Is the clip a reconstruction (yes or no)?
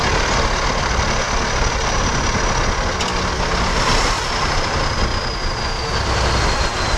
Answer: no